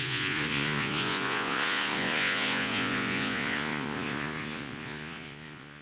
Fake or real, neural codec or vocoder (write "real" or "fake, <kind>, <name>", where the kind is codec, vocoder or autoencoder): fake, vocoder, Vocos